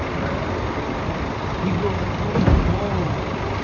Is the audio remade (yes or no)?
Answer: no